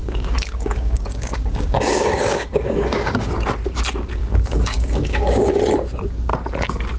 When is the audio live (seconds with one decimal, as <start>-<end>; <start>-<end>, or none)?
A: 3.3-4.2; 5.6-7.0